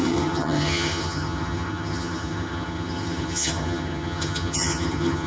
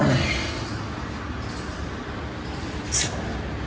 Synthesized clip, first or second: first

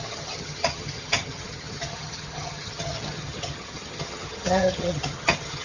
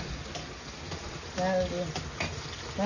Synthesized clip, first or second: first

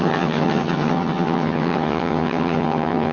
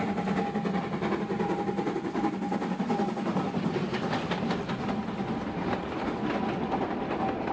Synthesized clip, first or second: first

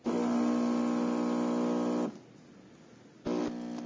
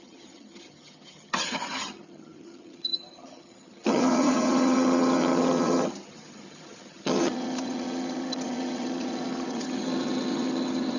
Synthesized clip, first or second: second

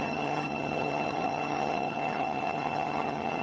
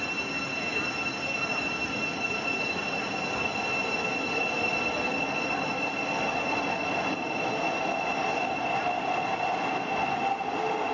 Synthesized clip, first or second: first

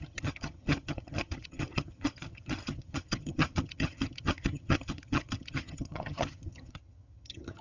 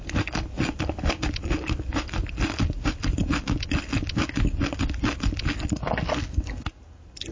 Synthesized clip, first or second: first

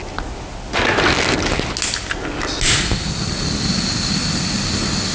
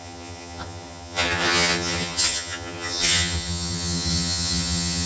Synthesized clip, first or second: second